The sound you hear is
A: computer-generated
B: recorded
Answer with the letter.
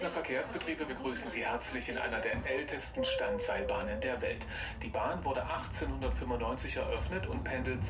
B